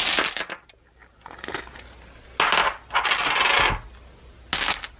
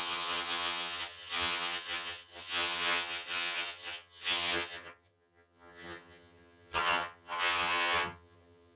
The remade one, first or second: second